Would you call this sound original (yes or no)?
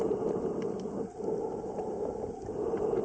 yes